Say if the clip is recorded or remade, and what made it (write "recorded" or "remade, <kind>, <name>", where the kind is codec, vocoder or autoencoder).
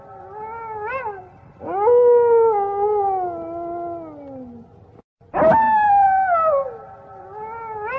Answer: recorded